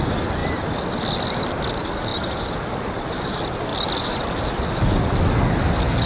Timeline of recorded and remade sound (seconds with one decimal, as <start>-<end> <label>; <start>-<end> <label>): 0.0-6.1 recorded